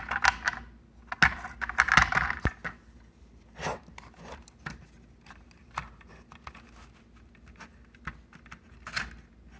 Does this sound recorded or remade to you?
recorded